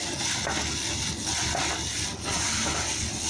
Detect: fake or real real